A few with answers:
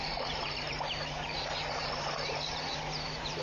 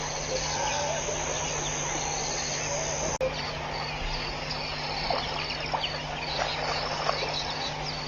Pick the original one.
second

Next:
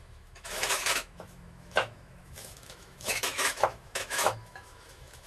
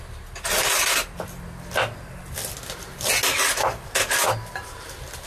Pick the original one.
second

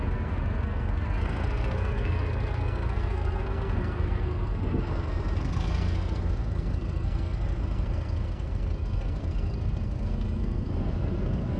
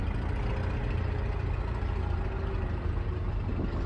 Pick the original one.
second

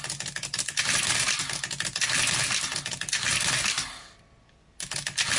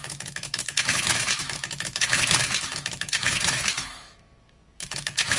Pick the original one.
first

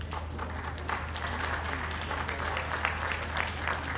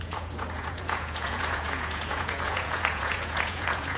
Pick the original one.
first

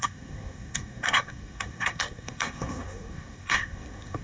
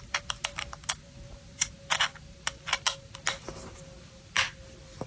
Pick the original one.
second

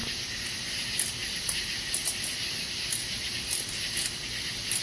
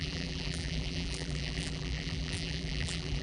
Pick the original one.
first